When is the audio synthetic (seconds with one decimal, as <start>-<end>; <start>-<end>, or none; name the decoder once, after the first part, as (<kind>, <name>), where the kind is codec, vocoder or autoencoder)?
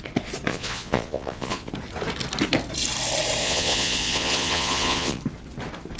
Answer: 0.5-1.7 (vocoder, Vocos); 3.4-5.2